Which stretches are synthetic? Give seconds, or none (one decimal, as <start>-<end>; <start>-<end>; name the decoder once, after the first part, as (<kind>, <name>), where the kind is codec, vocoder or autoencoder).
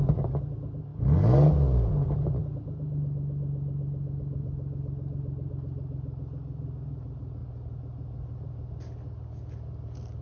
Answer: none